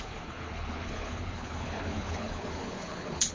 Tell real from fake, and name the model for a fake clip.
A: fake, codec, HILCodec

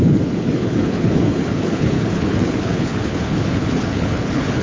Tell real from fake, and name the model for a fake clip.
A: fake, codec, HILCodec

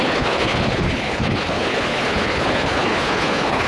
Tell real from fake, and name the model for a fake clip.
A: fake, codec, HILCodec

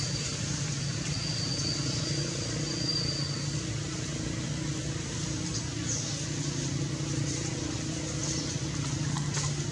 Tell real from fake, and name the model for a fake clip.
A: real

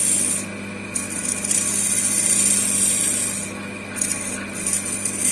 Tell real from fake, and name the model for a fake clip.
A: real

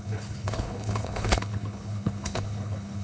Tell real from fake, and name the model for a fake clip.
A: fake, codec, HILCodec